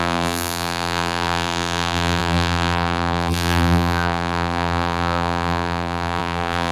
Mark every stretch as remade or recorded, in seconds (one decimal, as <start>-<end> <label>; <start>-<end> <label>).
0.0-6.7 remade

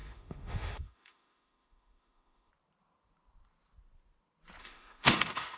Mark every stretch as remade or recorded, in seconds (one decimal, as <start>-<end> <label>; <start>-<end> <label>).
0.0-2.5 remade; 2.5-4.6 recorded; 4.6-5.6 remade